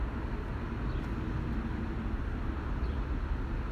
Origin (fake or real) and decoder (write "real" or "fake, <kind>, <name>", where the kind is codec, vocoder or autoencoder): real